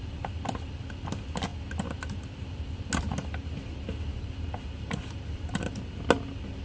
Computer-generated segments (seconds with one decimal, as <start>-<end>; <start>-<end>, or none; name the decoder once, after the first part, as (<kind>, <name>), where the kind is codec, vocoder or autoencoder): 4.1-5.7 (vocoder, BigVGAN v2)